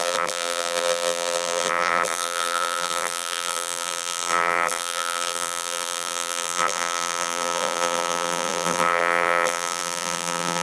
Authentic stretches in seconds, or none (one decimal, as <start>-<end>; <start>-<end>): none